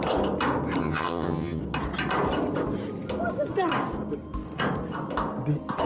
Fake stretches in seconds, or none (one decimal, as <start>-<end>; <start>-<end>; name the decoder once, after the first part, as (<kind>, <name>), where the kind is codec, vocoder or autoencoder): 0.8-1.6 (vocoder, HiFi-GAN)